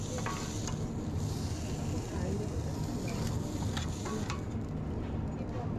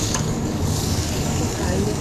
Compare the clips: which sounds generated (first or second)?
second